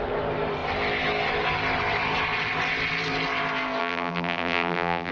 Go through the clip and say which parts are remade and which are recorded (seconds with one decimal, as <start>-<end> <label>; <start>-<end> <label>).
0.0-3.8 recorded; 3.8-5.1 remade